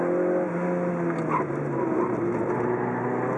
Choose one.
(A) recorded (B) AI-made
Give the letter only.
A